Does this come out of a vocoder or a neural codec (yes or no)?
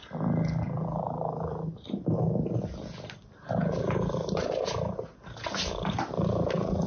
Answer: no